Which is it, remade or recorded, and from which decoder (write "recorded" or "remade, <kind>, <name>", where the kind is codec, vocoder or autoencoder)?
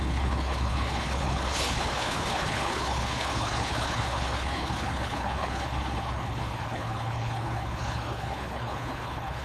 remade, codec, HILCodec